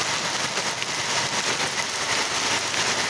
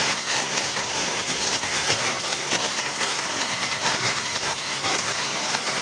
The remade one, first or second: second